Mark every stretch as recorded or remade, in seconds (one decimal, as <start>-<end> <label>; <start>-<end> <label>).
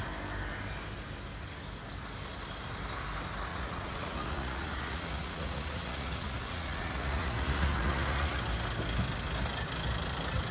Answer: 0.0-3.5 recorded; 3.5-8.4 remade; 8.4-10.5 recorded